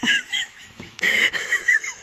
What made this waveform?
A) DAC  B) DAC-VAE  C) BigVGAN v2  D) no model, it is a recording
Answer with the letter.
B